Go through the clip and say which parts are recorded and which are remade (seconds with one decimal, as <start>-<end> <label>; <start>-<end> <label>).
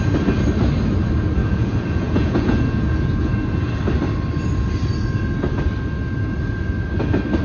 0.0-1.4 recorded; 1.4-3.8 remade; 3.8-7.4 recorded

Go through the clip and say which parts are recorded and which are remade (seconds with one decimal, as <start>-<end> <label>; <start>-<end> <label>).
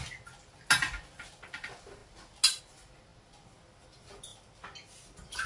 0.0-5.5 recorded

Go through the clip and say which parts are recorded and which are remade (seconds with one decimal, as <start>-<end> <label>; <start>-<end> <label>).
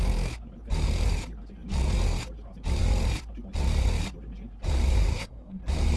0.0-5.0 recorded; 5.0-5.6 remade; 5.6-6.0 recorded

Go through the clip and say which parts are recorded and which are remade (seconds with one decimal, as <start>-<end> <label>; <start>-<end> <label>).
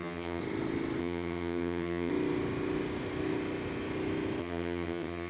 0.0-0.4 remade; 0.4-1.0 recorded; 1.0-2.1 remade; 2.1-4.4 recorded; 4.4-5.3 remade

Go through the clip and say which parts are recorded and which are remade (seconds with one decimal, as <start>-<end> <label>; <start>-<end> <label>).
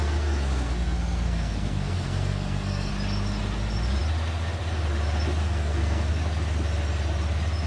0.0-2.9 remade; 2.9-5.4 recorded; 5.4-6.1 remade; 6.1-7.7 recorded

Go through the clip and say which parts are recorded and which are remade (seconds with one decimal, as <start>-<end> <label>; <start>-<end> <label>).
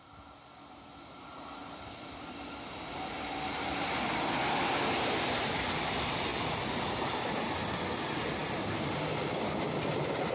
0.0-10.3 recorded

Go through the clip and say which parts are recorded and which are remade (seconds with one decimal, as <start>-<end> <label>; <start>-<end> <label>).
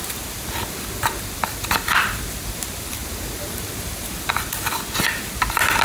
0.0-2.2 remade; 2.2-3.0 recorded; 3.0-4.4 remade; 4.4-5.8 recorded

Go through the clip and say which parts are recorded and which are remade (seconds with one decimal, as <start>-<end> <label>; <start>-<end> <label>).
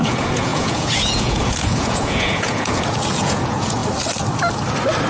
0.0-3.8 remade; 3.8-5.1 recorded